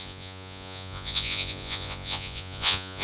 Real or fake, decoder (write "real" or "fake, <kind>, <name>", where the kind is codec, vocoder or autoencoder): fake, vocoder, Vocos